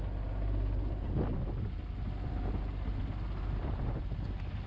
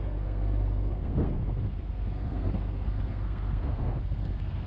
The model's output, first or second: second